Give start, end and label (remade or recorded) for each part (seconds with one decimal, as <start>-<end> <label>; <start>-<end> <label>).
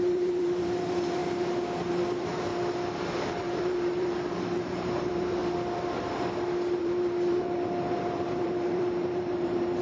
0.0-1.2 remade; 1.2-1.9 recorded; 1.9-2.5 remade; 2.5-3.0 recorded; 3.0-5.4 remade; 5.4-6.8 recorded; 6.8-9.8 remade